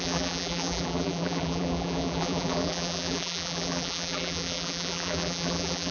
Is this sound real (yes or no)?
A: no